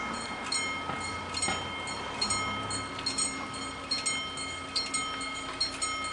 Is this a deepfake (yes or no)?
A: no